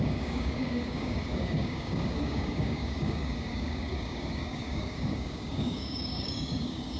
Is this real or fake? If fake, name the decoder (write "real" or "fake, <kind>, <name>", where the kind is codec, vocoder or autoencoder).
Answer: fake, codec, DAC